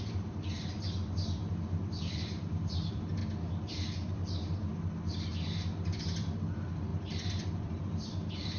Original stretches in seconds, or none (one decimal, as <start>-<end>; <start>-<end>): 3.2-3.7; 4.2-6.0